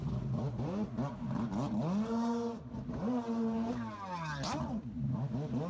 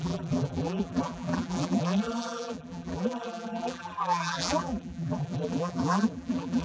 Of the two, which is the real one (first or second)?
first